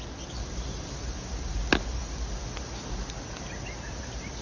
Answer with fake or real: real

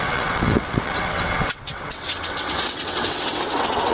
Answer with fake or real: fake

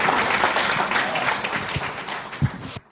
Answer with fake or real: real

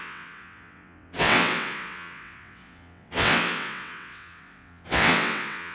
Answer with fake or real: fake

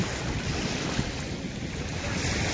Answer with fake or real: real